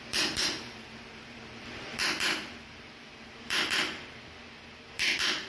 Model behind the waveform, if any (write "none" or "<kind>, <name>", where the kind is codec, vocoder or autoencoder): vocoder, BigVGAN v2